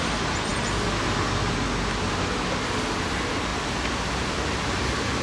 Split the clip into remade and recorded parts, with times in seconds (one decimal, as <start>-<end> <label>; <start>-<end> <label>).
0.0-3.5 recorded; 3.5-5.2 remade